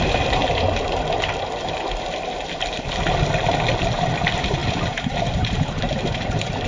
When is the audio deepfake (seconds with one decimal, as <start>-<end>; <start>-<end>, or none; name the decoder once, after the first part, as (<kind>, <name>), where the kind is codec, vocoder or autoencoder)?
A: 0.0-0.4 (vocoder, BigVGAN v2); 3.9-6.7